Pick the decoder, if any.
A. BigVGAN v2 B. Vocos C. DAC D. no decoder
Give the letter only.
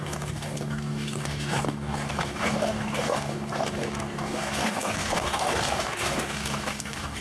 C